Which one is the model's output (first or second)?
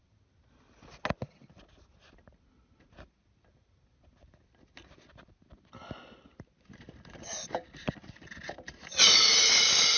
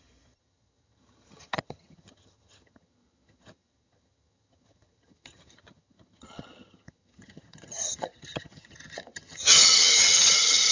second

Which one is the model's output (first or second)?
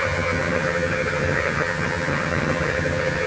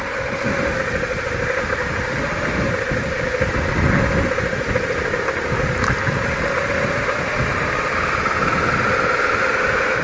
first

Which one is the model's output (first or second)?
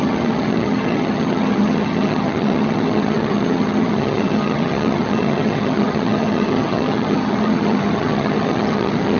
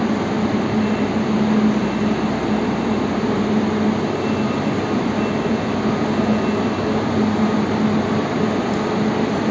first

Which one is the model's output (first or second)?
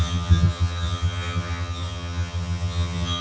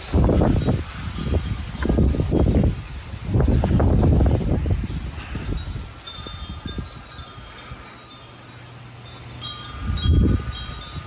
first